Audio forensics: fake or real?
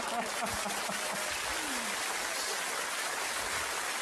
real